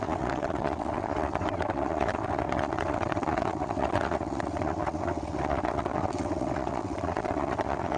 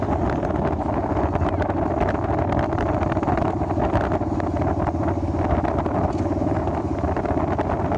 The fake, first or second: first